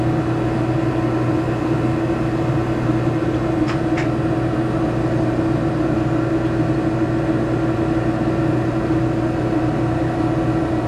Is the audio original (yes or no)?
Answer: yes